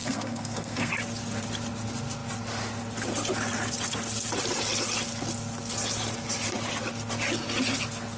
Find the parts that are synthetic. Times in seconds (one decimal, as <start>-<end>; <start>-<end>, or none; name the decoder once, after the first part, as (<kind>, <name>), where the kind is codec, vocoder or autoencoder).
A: 0.0-0.9 (codec, SNAC)